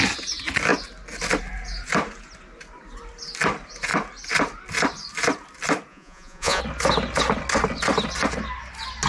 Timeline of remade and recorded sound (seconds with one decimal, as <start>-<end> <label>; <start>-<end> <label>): 0.0-5.9 recorded; 5.9-6.6 remade; 6.6-9.1 recorded